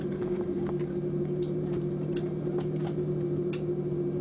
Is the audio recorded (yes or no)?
yes